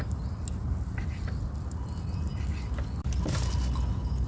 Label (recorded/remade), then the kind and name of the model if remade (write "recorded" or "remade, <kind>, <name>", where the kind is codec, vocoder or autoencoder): recorded